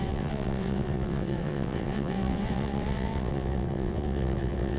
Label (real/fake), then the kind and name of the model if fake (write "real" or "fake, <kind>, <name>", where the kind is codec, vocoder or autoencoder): fake, vocoder, WaveNeXt